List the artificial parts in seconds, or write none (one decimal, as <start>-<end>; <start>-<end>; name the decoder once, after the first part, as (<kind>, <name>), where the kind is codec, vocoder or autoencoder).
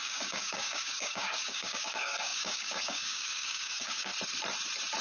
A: 0.0-4.1 (codec, DAC)